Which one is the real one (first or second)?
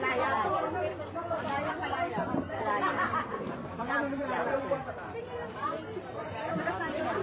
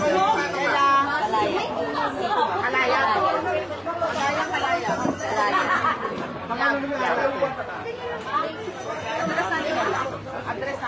second